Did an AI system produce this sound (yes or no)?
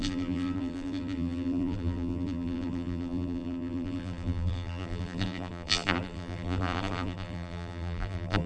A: yes